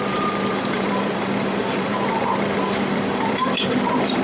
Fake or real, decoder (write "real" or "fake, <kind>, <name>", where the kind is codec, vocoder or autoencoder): fake, vocoder, BigVGAN v2